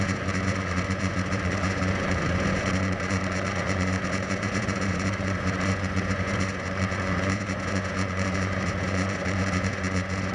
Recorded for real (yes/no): no